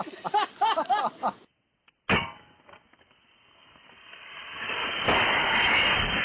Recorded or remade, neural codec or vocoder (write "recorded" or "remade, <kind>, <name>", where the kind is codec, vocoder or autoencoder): recorded